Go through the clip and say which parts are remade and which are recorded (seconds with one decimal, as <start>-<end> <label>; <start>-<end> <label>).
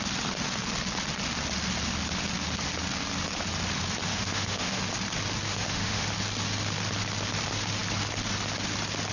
0.0-4.1 recorded; 4.1-4.8 remade; 4.8-5.5 recorded; 5.5-6.1 remade; 6.1-9.1 recorded